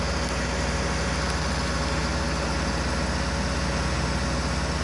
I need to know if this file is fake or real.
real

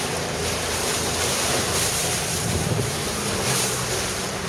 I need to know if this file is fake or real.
fake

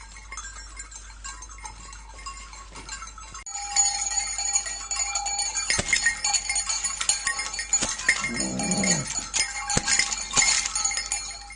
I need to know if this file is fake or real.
real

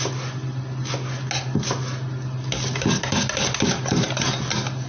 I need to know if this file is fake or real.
real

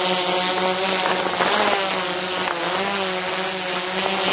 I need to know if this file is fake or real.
real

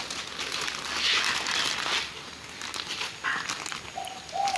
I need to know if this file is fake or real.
real